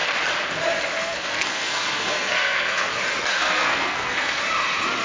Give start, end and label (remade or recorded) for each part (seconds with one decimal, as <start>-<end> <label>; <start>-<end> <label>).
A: 0.0-1.0 recorded; 1.0-2.9 remade; 2.9-3.3 recorded; 3.3-4.4 remade; 4.4-5.0 recorded